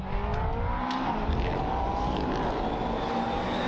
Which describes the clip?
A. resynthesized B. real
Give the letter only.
B